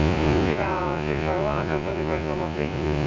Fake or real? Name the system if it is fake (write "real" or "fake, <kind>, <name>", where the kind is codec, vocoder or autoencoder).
fake, vocoder, Vocos